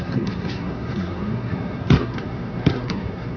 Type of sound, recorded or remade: remade